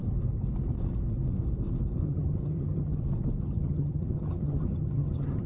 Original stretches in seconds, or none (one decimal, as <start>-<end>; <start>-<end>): 0.0-2.0; 3.0-3.4